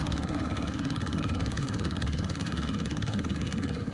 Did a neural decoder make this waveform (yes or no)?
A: yes